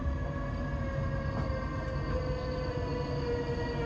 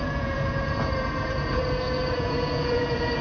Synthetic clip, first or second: second